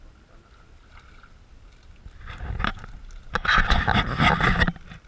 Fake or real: real